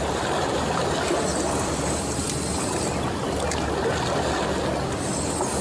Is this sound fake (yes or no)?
no